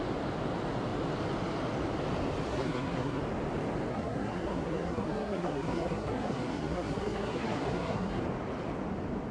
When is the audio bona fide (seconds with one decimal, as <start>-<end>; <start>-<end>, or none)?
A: 0.0-2.5; 3.2-3.9; 8.2-9.3